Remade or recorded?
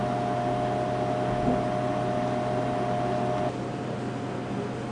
recorded